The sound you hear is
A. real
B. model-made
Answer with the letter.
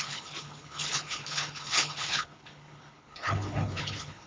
B